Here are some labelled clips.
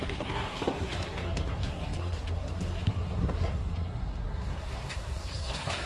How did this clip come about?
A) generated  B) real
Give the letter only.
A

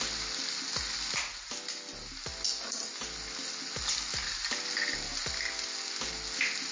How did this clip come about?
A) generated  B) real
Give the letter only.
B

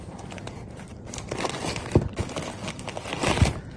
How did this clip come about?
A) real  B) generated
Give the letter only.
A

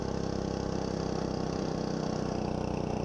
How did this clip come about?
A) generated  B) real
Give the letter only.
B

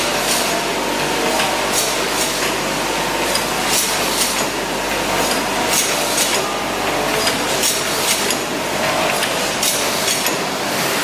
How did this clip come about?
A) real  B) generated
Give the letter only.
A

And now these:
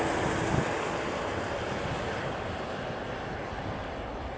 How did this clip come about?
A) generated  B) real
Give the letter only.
B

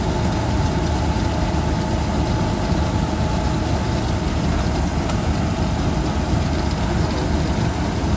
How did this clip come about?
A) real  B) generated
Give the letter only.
A